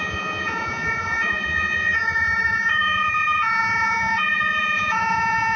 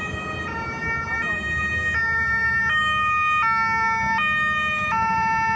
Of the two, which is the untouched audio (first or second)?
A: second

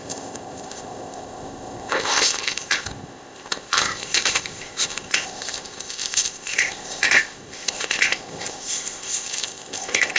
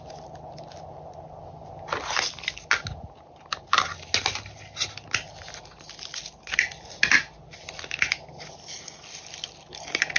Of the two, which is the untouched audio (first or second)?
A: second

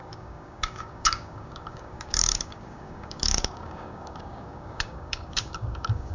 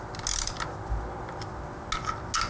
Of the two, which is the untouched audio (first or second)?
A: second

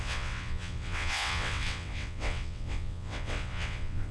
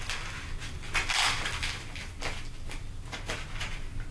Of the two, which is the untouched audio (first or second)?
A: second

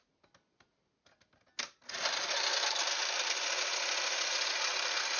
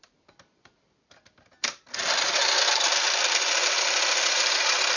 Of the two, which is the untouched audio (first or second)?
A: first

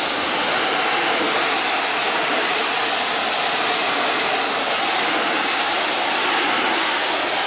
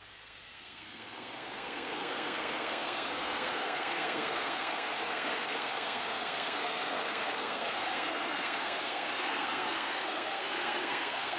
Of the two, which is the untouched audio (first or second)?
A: first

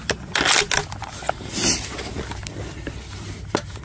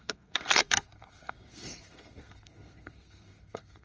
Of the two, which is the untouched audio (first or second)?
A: first